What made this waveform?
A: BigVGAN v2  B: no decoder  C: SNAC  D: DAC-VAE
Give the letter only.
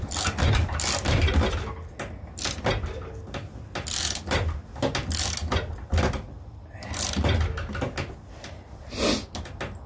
B